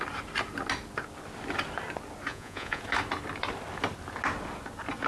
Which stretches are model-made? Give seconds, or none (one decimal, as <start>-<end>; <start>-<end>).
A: 2.3-2.8